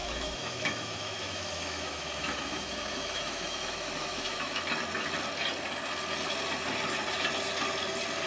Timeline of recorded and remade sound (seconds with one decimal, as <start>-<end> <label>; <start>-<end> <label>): 0.0-4.6 remade; 4.6-8.3 recorded